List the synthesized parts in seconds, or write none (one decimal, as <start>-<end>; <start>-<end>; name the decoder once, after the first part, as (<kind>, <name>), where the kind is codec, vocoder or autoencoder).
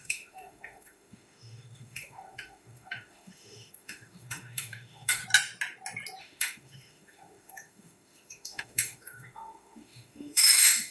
0.0-5.2 (autoencoder, DAC-VAE); 6.2-10.9